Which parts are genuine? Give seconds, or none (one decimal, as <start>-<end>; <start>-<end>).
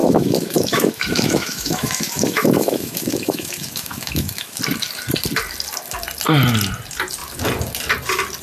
4.6-8.4